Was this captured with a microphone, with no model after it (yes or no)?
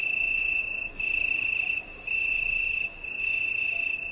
yes